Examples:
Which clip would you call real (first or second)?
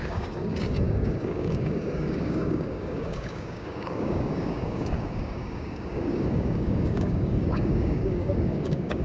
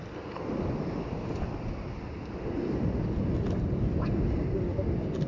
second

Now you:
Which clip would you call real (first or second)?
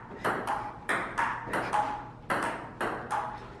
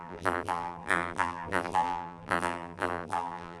first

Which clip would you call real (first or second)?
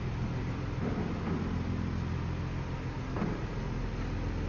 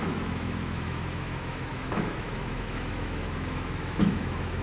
first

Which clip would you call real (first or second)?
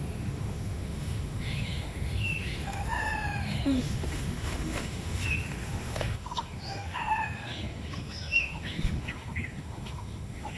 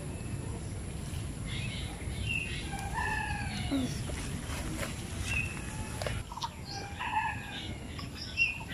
second